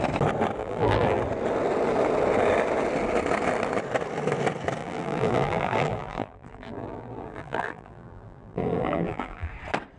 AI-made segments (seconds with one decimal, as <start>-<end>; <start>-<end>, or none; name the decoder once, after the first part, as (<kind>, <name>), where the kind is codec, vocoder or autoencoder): 0.6-1.2 (vocoder, BigVGAN v2); 4.8-9.5